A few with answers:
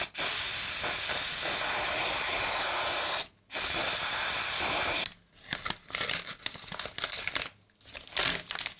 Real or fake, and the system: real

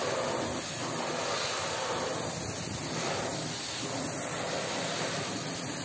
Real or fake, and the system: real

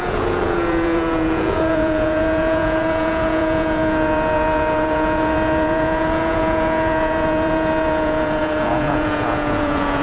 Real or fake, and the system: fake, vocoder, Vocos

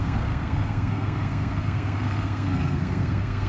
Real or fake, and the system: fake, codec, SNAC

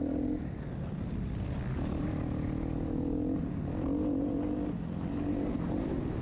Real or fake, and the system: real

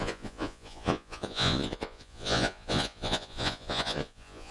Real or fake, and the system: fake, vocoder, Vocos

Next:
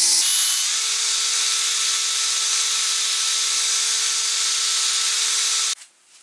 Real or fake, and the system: real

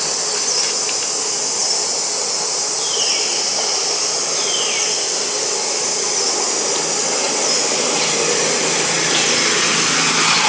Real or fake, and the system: real